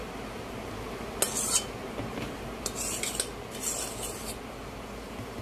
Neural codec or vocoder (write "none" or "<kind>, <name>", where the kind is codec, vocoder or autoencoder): none